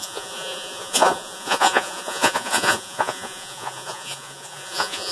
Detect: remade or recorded remade